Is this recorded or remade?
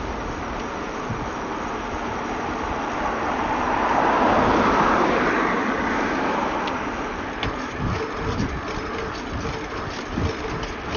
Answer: recorded